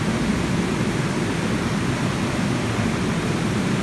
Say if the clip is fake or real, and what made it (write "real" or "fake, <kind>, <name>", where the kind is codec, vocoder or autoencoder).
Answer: real